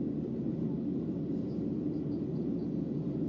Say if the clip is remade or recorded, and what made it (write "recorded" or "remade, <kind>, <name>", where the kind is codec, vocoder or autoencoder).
recorded